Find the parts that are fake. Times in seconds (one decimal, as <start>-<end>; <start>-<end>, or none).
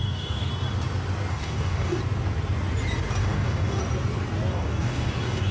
0.0-0.5; 1.3-2.0; 3.2-3.8; 4.5-5.5